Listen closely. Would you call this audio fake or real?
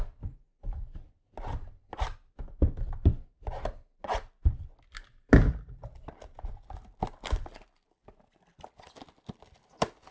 real